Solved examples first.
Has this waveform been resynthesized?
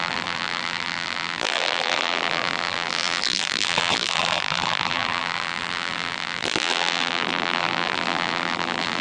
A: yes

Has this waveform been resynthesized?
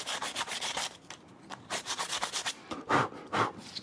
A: yes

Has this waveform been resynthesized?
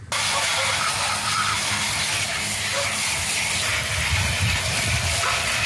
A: no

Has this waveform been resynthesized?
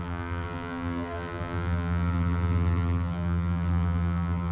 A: yes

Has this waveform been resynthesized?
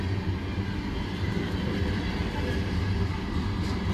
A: no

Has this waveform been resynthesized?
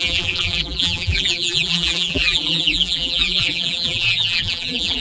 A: yes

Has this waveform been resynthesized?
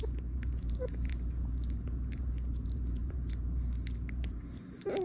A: yes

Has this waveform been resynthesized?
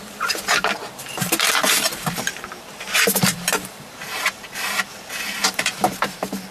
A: yes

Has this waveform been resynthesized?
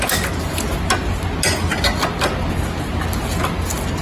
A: no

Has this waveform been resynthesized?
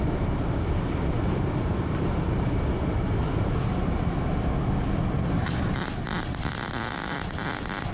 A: yes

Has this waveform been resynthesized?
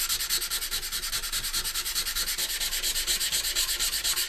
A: no